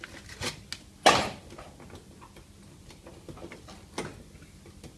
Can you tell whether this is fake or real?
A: real